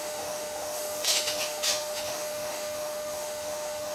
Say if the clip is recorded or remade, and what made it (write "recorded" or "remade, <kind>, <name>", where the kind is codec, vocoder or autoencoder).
remade, autoencoder, DAC-VAE